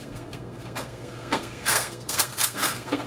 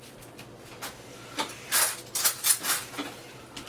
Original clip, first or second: second